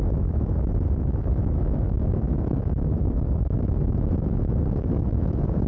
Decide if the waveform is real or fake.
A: fake